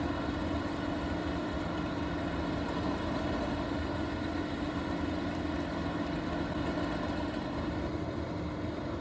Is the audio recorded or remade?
recorded